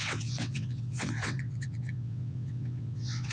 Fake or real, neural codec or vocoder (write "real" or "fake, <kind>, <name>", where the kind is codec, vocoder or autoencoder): fake, vocoder, WaveNeXt